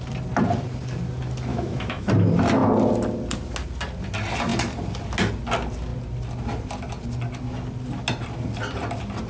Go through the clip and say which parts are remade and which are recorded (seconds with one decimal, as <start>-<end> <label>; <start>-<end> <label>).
0.0-1.5 recorded; 1.5-2.1 remade; 2.1-9.3 recorded